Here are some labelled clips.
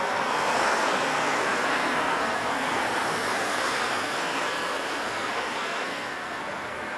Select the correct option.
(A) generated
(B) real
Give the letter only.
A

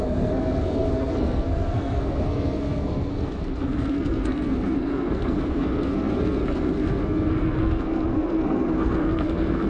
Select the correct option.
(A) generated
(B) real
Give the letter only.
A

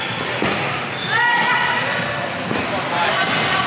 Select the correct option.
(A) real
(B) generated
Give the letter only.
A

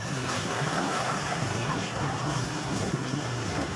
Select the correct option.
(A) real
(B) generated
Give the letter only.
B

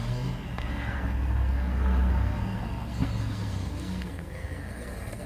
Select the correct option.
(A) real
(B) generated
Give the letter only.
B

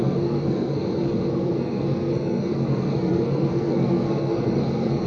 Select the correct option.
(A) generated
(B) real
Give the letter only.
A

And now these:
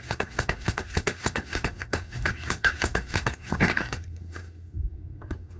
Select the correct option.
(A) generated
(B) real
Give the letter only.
A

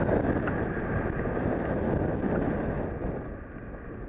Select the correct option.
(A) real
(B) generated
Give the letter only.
A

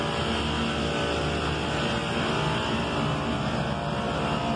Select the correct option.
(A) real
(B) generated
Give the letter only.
A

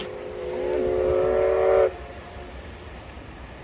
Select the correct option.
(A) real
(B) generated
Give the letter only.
A